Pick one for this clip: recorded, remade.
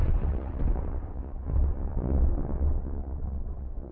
remade